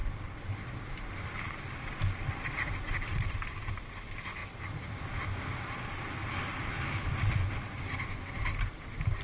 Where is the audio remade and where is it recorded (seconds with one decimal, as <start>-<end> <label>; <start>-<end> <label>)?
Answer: 0.0-9.2 recorded